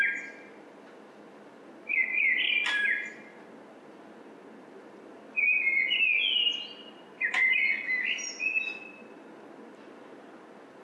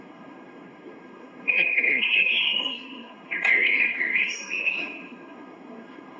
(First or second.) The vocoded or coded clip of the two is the second